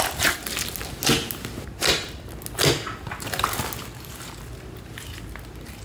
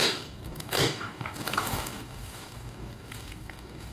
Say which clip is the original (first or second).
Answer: first